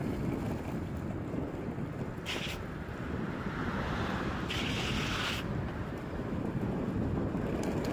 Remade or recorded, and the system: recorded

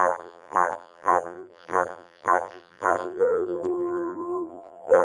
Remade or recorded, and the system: remade, vocoder, BigVGAN v2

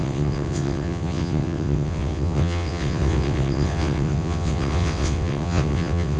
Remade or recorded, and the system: remade, vocoder, WaveNeXt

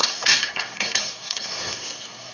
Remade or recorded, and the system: remade, codec, SNAC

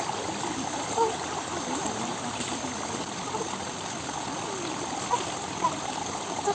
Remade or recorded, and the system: remade, vocoder, BigVGAN v2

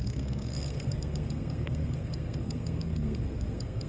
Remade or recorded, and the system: remade, codec, SNAC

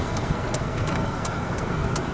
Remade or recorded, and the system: remade, codec, SNAC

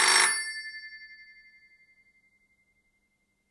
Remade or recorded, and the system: recorded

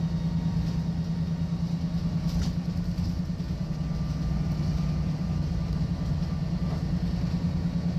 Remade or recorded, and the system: recorded